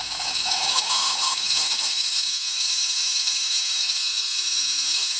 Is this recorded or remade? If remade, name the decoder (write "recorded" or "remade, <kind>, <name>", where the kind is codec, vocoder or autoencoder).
remade, autoencoder, DAC-VAE